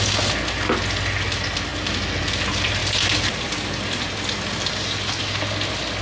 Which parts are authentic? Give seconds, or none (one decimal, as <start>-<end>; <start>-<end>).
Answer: 0.0-6.0